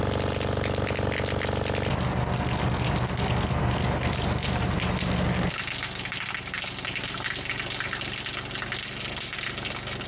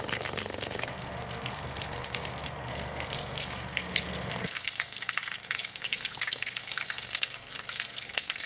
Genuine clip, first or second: first